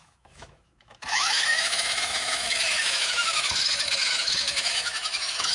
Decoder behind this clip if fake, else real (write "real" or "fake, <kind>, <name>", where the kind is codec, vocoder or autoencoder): fake, autoencoder, DAC-VAE